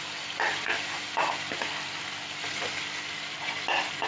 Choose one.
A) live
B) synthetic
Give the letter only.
A